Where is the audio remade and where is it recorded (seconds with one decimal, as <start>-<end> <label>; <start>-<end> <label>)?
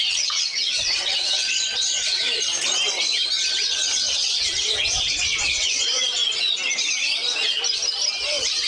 0.0-2.2 remade; 2.2-3.5 recorded; 3.5-6.2 remade; 6.2-8.7 recorded